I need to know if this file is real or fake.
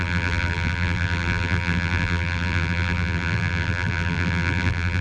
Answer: fake